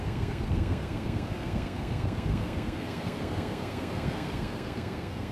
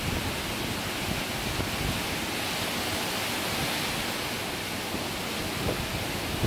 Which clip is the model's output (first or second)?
first